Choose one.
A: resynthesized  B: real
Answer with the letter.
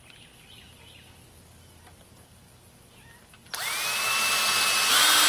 B